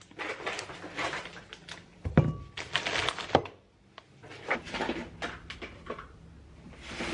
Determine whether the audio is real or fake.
real